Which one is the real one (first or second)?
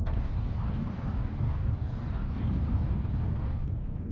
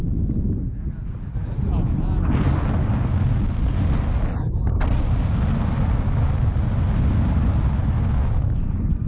second